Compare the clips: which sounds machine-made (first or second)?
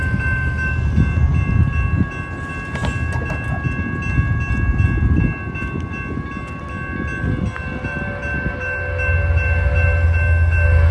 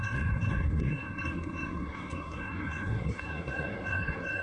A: second